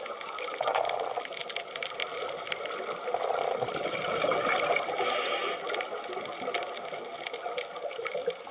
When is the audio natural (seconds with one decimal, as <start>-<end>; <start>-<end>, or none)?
0.0-8.5